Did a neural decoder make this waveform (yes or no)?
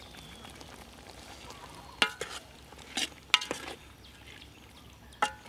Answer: no